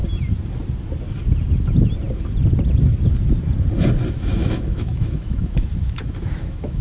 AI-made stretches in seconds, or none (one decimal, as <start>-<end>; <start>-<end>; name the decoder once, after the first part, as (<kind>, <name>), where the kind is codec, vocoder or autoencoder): 4.1-6.8 (autoencoder, DAC-VAE)